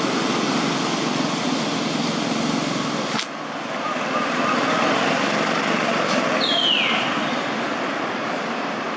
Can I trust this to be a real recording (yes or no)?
yes